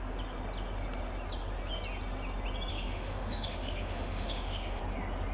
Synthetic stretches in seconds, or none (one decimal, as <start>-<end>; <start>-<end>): 2.7-4.8